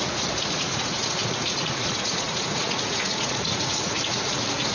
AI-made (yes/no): yes